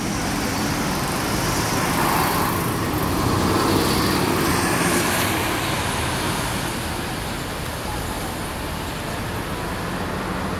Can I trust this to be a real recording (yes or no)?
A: yes